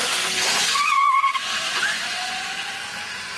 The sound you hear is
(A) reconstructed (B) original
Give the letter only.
A